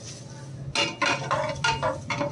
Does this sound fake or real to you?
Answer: real